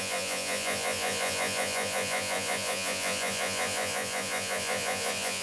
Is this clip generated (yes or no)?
yes